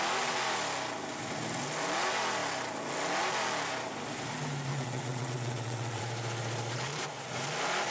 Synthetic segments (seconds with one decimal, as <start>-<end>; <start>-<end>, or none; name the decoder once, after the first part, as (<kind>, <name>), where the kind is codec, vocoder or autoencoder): 4.7-6.0 (vocoder, WaveNeXt)